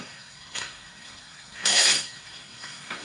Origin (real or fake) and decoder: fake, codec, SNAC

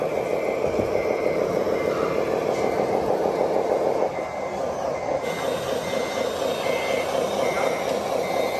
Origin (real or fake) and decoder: real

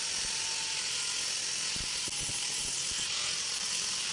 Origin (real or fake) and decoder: real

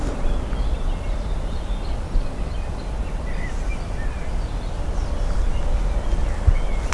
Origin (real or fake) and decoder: real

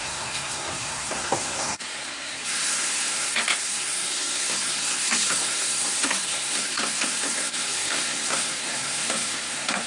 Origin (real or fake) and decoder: fake, codec, SNAC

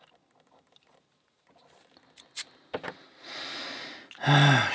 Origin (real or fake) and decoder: real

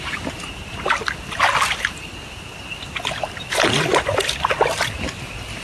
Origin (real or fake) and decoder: real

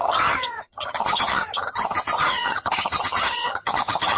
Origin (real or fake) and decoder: fake, vocoder, HiFi-GAN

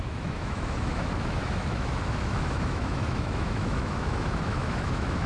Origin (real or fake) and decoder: fake, autoencoder, DAC-VAE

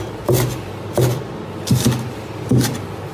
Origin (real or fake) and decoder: real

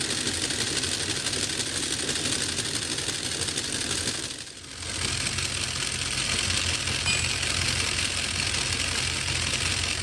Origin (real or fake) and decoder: real